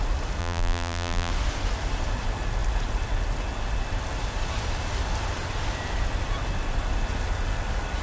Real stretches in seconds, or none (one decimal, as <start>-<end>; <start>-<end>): 0.0-0.4; 1.3-8.0

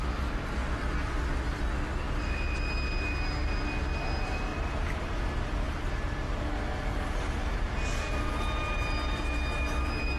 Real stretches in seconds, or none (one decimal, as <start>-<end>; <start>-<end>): 0.0-10.2

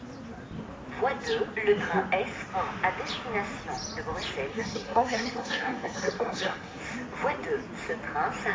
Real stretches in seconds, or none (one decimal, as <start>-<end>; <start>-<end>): 0.0-4.5; 6.8-8.5

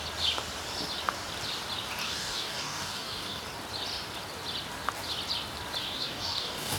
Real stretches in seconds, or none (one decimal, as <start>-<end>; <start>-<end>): 0.0-2.0; 3.4-5.8

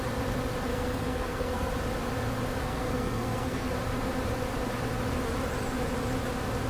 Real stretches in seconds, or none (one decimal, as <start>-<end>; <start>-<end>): 0.0-0.7; 1.7-2.6; 3.7-6.7

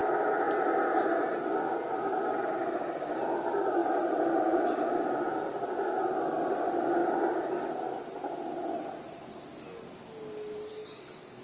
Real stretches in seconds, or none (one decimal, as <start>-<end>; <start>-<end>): 0.0-10.7